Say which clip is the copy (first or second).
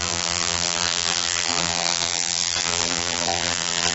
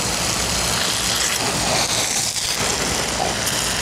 first